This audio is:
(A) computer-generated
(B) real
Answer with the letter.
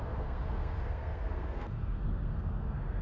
A